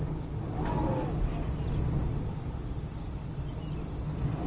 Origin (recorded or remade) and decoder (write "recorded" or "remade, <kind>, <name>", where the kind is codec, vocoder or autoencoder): recorded